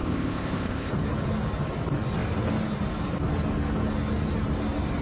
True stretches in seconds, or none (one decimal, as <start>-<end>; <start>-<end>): 0.9-5.0